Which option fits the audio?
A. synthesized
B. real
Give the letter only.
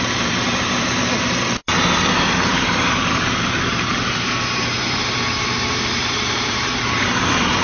A